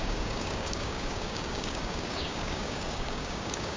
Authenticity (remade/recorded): remade